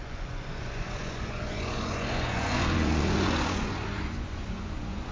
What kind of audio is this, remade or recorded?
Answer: remade